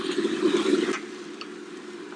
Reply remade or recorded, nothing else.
recorded